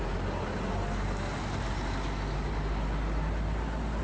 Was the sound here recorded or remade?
recorded